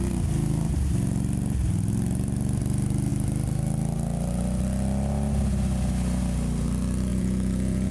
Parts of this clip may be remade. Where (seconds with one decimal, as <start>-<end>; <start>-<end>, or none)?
7.1-7.9